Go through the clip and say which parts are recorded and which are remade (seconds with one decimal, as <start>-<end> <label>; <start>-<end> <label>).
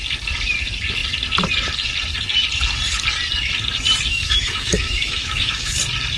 0.0-4.1 recorded; 4.1-5.8 remade; 5.8-6.2 recorded